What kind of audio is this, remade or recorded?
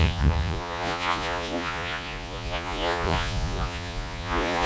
remade